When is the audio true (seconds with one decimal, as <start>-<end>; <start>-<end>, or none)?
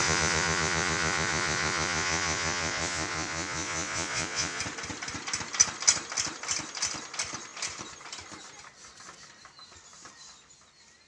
4.6-11.1